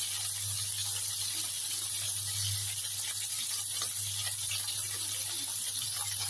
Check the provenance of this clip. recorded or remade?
remade